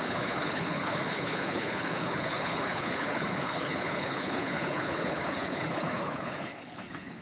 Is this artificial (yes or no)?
yes